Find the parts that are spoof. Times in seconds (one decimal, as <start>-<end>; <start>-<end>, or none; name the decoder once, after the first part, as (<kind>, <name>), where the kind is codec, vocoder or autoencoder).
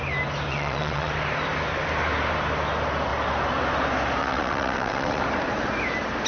0.5-1.1 (vocoder, WaveNeXt); 4.2-5.2